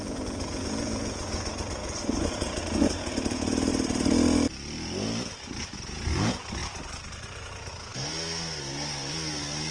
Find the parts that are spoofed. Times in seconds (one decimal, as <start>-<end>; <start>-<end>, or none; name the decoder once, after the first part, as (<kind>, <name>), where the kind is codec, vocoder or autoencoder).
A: 0.0-3.7 (vocoder, Vocos); 5.6-6.6; 7.4-7.9